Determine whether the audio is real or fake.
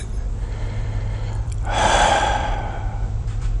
fake